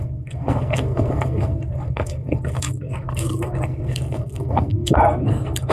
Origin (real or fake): fake